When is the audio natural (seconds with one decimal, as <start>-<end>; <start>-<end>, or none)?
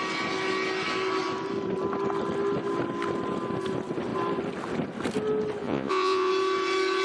0.0-5.6; 6.3-7.0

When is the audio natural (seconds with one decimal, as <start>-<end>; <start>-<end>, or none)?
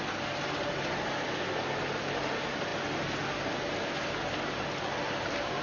0.0-5.6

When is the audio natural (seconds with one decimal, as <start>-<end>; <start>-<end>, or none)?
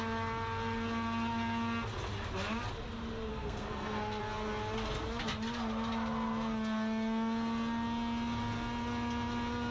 0.0-3.3; 4.2-9.7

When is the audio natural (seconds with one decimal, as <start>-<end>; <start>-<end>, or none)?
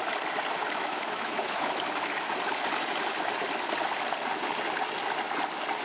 0.0-0.6; 2.3-5.8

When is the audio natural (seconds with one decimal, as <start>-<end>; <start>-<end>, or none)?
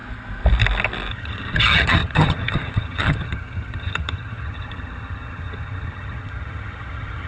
0.0-1.1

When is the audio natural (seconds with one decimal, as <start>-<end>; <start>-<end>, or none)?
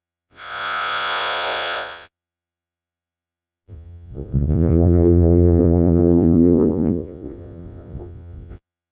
none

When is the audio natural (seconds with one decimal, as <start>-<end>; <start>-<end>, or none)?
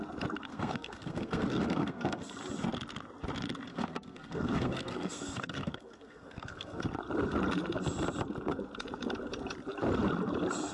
0.0-0.5; 2.2-3.7; 6.8-10.7